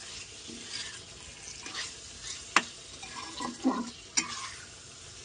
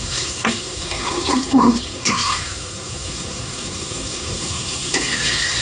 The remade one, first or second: second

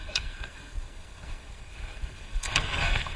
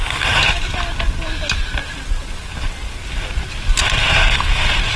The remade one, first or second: first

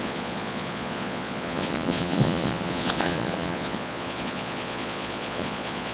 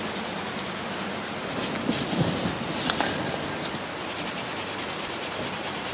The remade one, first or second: first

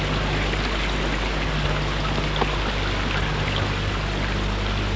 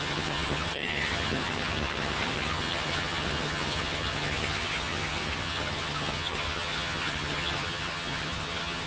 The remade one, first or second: second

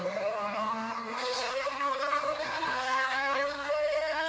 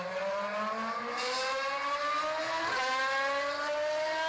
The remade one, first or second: first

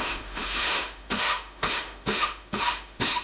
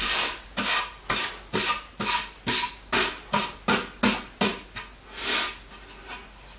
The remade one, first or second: first